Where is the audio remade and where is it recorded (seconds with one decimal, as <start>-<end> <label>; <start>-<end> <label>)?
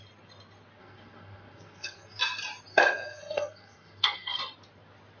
0.0-0.8 recorded; 0.8-2.2 remade; 2.2-2.7 recorded; 2.7-4.4 remade; 4.4-5.2 recorded